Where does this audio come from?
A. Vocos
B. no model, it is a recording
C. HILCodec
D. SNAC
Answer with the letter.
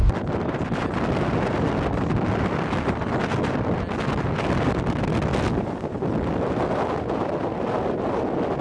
B